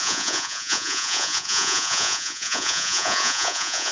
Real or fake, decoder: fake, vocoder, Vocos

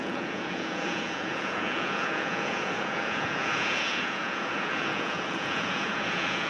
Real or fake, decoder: fake, vocoder, Vocos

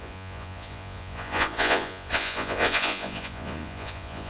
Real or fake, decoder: fake, vocoder, Vocos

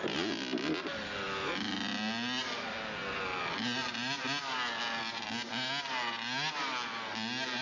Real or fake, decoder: real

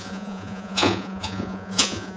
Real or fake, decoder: fake, vocoder, Vocos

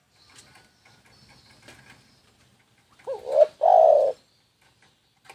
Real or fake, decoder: real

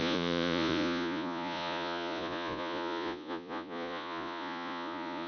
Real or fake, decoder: fake, vocoder, Vocos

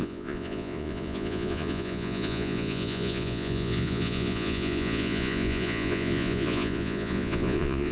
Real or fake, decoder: fake, vocoder, Vocos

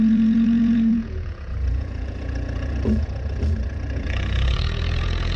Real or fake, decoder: fake, vocoder, Vocos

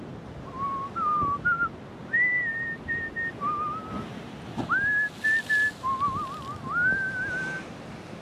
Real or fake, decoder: real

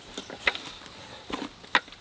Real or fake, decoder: real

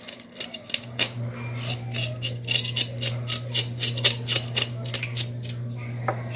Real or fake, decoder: real